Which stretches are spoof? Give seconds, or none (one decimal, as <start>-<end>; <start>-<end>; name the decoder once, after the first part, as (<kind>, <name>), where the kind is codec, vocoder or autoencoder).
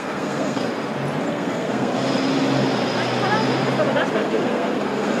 0.0-0.7 (codec, SNAC); 1.3-1.9; 4.1-5.2